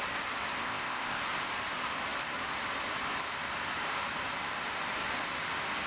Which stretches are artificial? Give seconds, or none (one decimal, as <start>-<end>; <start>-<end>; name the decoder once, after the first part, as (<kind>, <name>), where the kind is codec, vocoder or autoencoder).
0.6-1.2 (codec, ZipCodec)